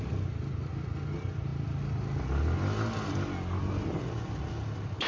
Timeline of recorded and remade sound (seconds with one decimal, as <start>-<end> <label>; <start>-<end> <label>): 0.0-5.1 recorded